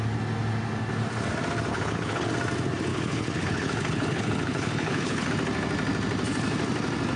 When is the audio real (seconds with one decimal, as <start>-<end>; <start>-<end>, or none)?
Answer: 0.0-1.7; 2.3-2.9; 5.3-7.2